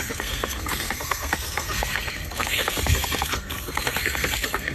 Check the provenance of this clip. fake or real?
fake